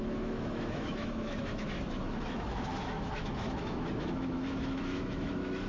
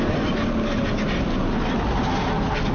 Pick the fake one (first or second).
first